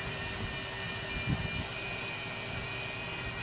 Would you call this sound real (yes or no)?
yes